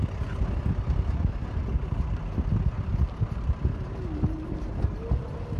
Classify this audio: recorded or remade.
recorded